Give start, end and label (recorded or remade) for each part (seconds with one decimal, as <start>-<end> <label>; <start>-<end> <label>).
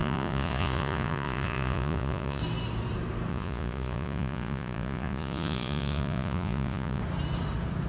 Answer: 0.0-2.4 remade; 2.4-3.3 recorded; 3.3-7.0 remade; 7.0-7.9 recorded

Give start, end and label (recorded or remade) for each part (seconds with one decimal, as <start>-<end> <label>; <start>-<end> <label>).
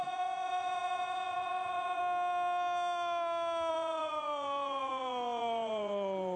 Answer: 0.0-2.0 remade; 2.0-3.7 recorded; 3.7-6.4 remade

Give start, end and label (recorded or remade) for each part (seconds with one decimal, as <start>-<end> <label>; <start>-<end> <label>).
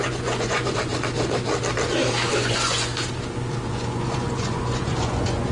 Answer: 0.0-0.9 remade; 0.9-2.4 recorded; 2.4-2.9 remade; 2.9-3.7 recorded; 3.7-5.5 remade